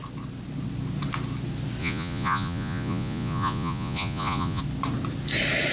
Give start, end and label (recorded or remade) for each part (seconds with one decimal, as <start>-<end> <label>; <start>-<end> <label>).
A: 0.0-1.8 recorded; 1.8-4.6 remade; 4.6-5.7 recorded